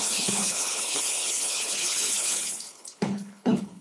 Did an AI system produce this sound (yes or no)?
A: yes